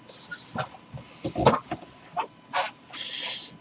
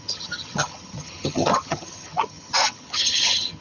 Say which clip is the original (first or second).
first